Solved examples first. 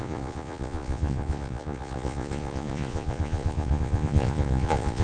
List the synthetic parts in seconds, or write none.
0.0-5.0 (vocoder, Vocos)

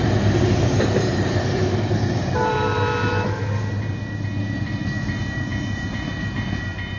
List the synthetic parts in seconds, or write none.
0.0-7.0 (vocoder, BigVGAN v2)

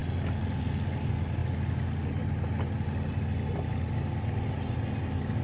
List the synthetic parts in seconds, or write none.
none

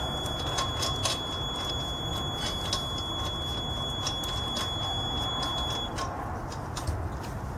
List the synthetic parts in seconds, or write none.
none

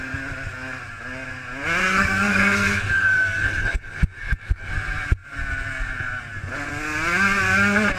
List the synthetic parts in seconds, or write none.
1.8-4.7 (codec, SNAC)